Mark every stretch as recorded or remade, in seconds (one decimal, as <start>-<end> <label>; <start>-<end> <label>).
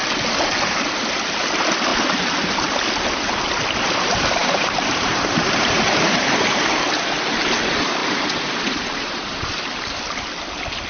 0.0-4.4 recorded; 4.4-6.6 remade; 6.6-8.0 recorded; 8.0-10.0 remade; 10.0-10.9 recorded